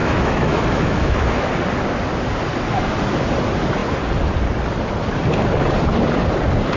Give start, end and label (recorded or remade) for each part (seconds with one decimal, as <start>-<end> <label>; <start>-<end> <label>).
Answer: 0.0-1.5 remade; 1.5-6.8 recorded